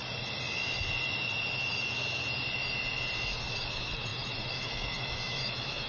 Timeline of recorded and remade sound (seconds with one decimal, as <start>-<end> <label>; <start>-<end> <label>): 0.0-3.5 recorded; 3.5-5.9 remade